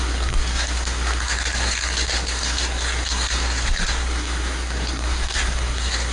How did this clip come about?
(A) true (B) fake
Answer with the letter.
B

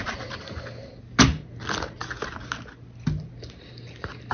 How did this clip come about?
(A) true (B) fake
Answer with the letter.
A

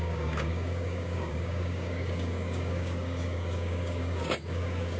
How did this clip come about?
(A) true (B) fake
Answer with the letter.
B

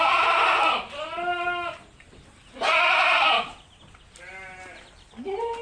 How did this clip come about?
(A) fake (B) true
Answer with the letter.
B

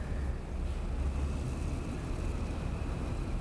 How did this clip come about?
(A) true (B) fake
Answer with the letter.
A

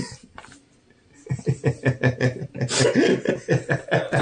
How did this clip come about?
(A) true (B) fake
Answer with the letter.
A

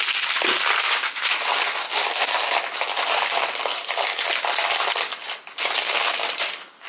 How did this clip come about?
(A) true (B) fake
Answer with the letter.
A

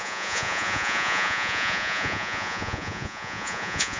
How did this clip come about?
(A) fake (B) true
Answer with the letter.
A